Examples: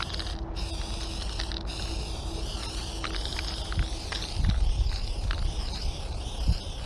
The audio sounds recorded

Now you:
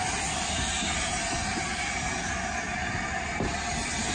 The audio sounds recorded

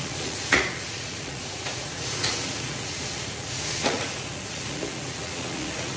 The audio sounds remade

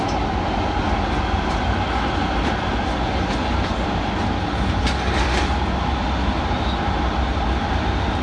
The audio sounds recorded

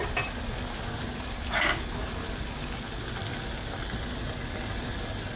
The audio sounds recorded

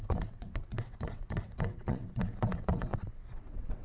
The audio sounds remade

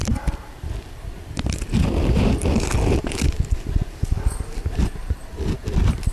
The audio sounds remade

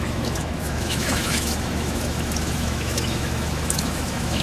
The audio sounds remade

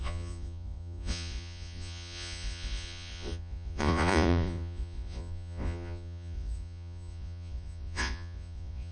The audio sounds remade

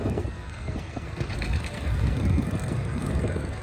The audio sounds remade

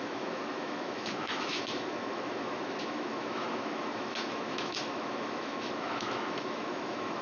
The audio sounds remade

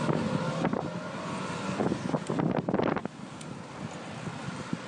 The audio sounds recorded